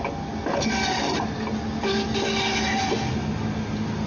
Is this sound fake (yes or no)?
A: no